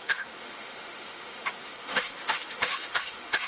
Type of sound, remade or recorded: remade